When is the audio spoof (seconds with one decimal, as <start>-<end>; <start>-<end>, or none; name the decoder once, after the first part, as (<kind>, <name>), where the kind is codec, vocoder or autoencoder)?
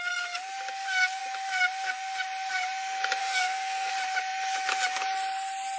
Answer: 3.2-3.9 (codec, SNAC)